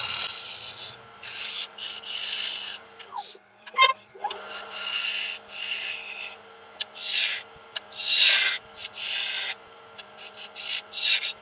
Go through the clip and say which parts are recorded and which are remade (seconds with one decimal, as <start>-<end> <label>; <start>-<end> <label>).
0.0-11.4 recorded